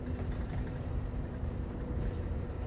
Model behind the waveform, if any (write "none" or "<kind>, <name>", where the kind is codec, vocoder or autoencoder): vocoder, BigVGAN v2